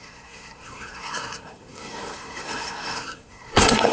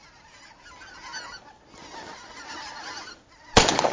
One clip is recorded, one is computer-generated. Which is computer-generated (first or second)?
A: first